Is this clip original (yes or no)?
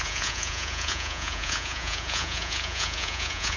no